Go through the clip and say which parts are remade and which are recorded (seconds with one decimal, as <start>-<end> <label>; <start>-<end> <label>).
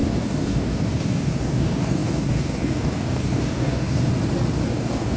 0.0-4.1 remade; 4.1-4.7 recorded; 4.7-5.2 remade